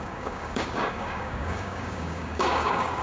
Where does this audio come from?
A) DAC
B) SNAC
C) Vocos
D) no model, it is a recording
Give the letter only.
A